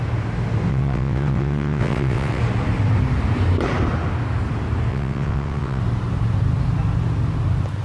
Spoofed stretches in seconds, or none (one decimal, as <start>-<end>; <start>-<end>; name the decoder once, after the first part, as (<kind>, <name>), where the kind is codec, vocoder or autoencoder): 0.7-2.4 (vocoder, WaveNeXt); 4.9-5.8

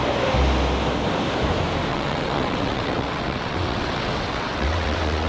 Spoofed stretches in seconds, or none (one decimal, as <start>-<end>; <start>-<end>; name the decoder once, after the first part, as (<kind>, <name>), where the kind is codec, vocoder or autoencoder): 1.9-5.3 (vocoder, WaveNeXt)